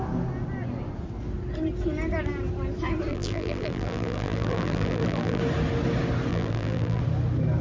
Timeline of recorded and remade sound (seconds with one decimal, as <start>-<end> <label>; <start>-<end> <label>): 0.0-3.1 recorded; 3.1-5.4 remade; 5.4-6.3 recorded; 6.3-7.0 remade; 7.0-7.6 recorded